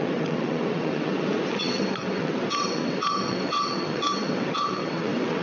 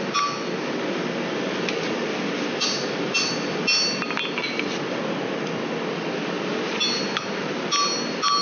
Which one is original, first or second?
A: second